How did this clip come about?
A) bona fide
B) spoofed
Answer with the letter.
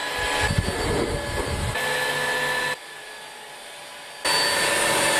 A